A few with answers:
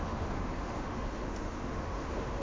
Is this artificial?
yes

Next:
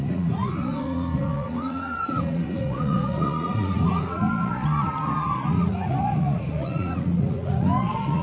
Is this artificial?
yes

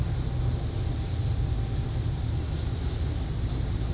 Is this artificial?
no